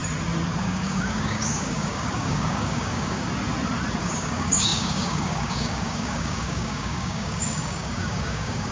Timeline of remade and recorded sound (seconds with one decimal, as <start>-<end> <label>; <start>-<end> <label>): 0.0-0.6 recorded; 0.6-3.2 remade; 3.2-4.0 recorded; 4.0-8.7 remade